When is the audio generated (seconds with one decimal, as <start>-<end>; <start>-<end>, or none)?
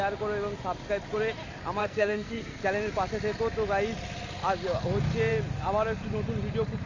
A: 1.8-2.6